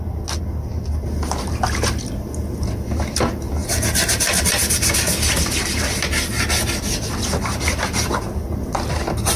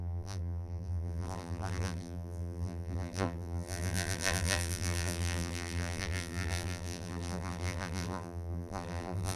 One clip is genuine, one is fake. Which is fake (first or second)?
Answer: second